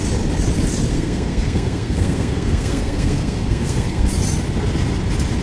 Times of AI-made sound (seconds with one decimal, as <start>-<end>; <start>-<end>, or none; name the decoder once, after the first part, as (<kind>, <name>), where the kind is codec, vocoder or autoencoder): 0.9-4.1 (codec, SNAC)